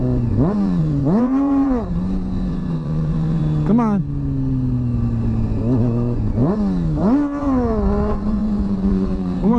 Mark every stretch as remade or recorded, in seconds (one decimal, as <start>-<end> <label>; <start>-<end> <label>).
0.0-3.4 remade; 3.4-5.8 recorded; 5.8-6.4 remade; 6.4-7.4 recorded; 7.4-9.6 remade